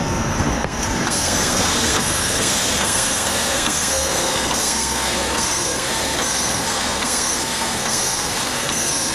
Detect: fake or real fake